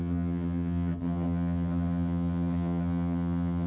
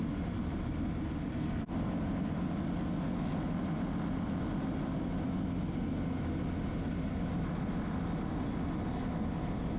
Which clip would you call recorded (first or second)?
second